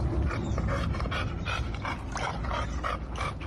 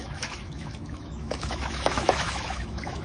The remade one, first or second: second